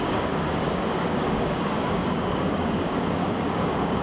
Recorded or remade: remade